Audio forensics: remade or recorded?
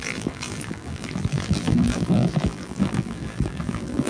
remade